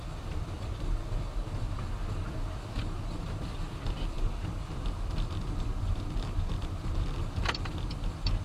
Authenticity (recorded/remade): remade